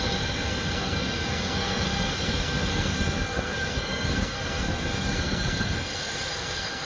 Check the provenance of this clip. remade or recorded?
remade